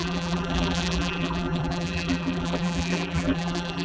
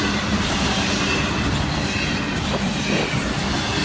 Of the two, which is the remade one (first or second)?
first